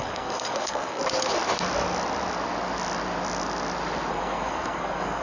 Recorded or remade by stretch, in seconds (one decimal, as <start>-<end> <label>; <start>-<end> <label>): 0.0-1.0 remade; 1.0-4.1 recorded; 4.1-5.2 remade